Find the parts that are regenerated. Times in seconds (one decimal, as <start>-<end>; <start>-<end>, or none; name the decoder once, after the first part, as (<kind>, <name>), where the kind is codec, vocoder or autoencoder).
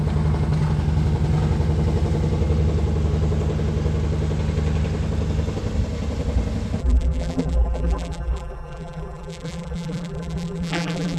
6.8-11.2 (vocoder, BigVGAN v2)